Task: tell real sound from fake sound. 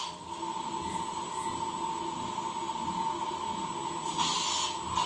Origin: real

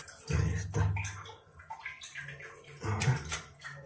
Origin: real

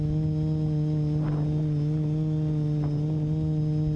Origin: real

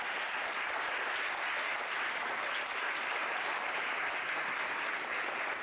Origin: real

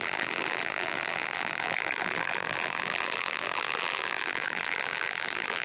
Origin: fake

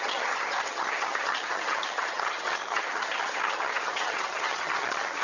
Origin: fake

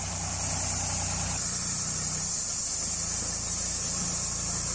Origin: real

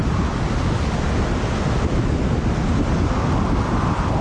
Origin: real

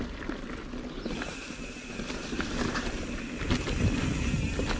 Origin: real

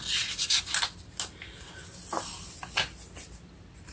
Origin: real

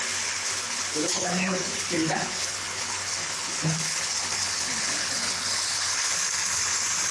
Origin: fake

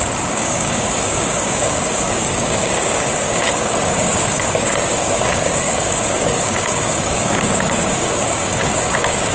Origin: fake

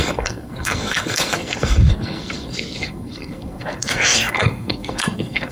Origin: fake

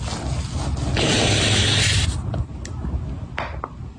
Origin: real